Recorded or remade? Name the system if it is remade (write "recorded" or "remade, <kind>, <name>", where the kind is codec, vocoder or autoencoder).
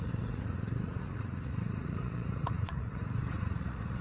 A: remade, vocoder, Vocos